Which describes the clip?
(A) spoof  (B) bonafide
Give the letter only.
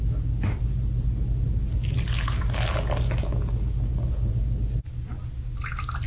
B